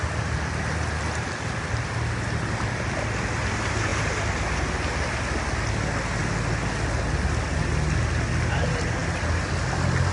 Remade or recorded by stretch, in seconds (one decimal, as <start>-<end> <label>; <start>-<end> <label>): 0.0-10.1 recorded